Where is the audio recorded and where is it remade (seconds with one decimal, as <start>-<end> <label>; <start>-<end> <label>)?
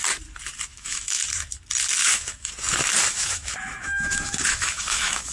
0.0-0.7 recorded; 0.7-1.2 remade; 1.2-2.0 recorded; 2.0-2.5 remade; 2.5-3.1 recorded; 3.1-5.3 remade